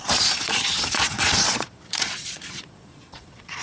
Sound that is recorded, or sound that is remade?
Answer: remade